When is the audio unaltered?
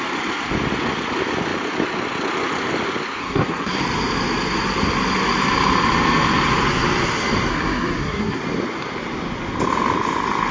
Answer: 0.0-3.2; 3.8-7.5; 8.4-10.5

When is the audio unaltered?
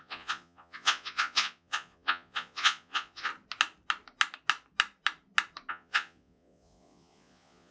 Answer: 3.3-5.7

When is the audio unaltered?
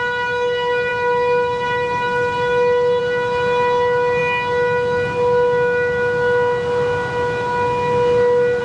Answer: 0.0-8.6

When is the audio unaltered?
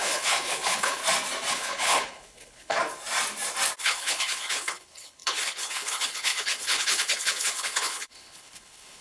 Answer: 1.0-1.5; 2.8-3.8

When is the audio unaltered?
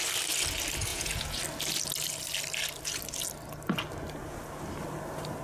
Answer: 0.0-0.9; 1.4-5.4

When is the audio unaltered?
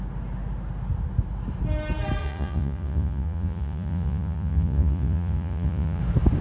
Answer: 0.0-2.2; 6.0-6.4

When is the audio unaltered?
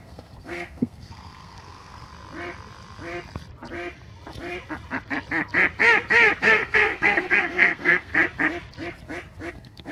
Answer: 2.1-6.4; 8.1-9.5